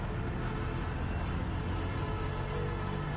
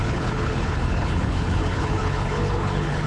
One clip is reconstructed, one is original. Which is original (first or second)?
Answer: first